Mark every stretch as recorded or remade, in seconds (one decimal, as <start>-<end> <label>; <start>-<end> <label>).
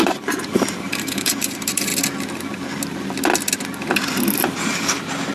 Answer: 0.0-1.9 remade; 1.9-4.3 recorded; 4.3-5.3 remade